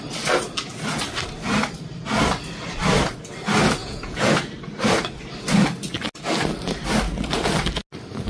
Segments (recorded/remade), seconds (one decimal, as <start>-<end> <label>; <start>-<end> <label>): 0.0-3.8 recorded; 3.8-4.3 remade; 4.3-8.3 recorded